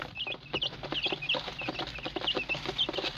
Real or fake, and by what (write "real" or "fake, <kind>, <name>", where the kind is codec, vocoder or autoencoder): real